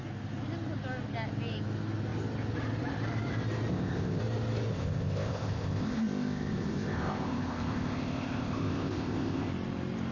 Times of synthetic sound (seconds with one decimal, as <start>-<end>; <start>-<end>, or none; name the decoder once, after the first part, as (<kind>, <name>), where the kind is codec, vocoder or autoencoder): 3.7-4.2 (codec, ZipCodec); 4.7-9.5